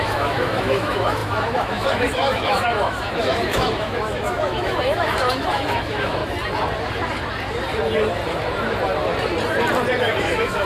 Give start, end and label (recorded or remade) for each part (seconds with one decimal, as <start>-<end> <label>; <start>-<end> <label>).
0.0-6.2 remade; 6.2-10.0 recorded; 10.0-10.7 remade